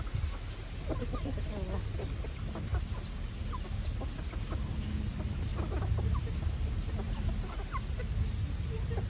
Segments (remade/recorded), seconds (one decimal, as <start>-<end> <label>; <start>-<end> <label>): 0.0-5.5 recorded; 5.5-7.5 remade; 7.5-9.1 recorded